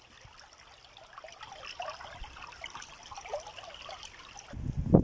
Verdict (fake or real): real